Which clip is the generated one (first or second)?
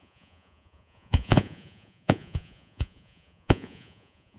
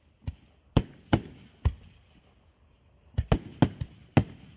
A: first